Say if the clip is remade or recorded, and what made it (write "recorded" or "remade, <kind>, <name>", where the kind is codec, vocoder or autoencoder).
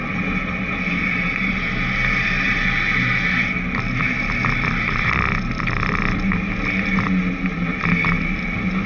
recorded